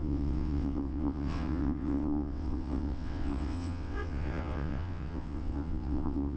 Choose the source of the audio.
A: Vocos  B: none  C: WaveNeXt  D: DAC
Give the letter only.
C